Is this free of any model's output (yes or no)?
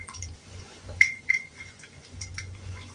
no